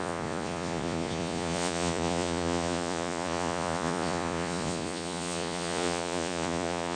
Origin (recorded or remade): remade